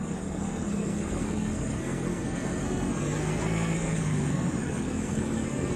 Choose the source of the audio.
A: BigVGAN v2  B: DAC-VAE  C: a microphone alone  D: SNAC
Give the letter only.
D